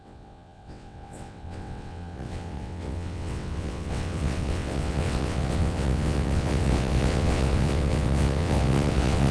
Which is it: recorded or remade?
remade